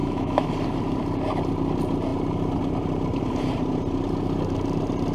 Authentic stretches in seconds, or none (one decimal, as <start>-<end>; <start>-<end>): 0.5-5.1